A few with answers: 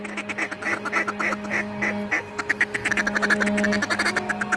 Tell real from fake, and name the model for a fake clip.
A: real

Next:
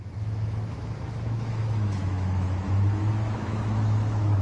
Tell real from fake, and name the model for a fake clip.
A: fake, autoencoder, DAC-VAE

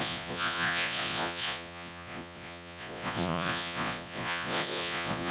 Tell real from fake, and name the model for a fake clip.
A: fake, vocoder, Vocos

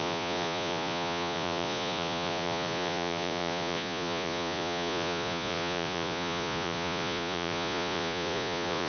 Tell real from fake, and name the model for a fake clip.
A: fake, vocoder, Vocos